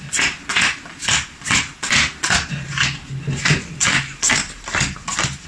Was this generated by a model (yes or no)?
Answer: no